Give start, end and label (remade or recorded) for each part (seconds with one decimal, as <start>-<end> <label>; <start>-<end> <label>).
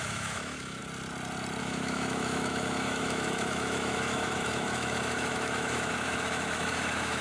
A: 0.0-0.8 remade; 0.8-1.6 recorded; 1.6-7.2 remade